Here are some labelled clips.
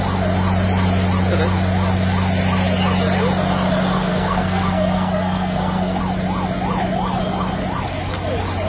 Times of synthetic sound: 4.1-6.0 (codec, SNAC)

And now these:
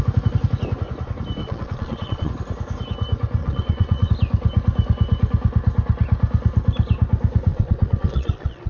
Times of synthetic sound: 1.4-2.3 (vocoder, Vocos); 3.4-4.1; 7.5-8.7